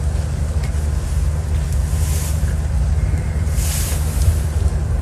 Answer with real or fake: real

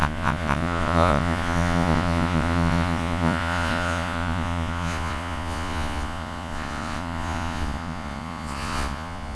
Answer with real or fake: fake